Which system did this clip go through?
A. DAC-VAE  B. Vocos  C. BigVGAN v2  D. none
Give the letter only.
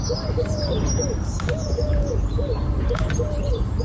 C